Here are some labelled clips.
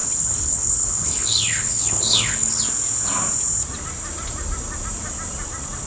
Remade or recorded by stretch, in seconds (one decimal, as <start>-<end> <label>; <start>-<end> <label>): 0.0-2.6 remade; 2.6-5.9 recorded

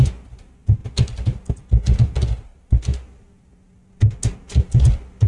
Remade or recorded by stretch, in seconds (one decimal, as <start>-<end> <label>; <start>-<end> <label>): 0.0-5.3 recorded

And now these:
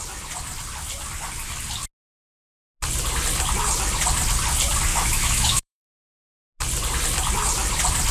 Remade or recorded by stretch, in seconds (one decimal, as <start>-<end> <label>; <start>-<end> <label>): 0.0-4.9 recorded; 4.9-5.9 remade; 5.9-8.1 recorded

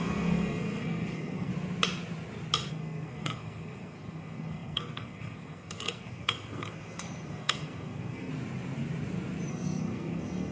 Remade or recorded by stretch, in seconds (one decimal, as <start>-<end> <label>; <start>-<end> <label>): 0.0-1.5 remade; 1.5-2.7 recorded; 2.7-8.3 remade; 8.3-9.5 recorded; 9.5-10.5 remade